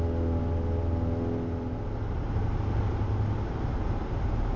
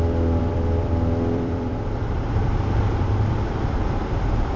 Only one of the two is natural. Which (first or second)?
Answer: first